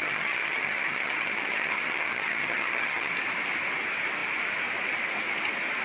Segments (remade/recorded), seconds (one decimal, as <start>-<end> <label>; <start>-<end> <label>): 0.0-3.1 remade; 3.1-5.8 recorded